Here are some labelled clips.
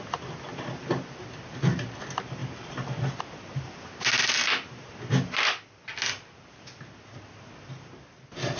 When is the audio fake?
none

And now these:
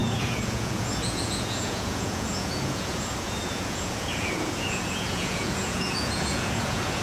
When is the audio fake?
0.0-7.0 (vocoder, Vocos)

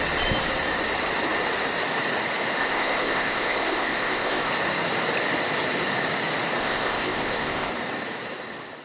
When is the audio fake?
2.6-4.5 (codec, ZipCodec); 6.6-7.7

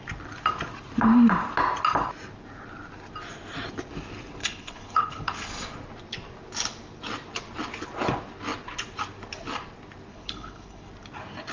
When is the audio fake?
4.4-5.5 (codec, HILCodec); 10.1-10.9

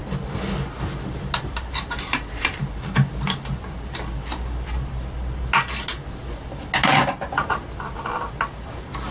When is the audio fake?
none

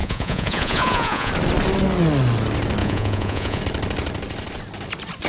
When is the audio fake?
0.0-1.3 (vocoder, Vocos); 2.8-3.6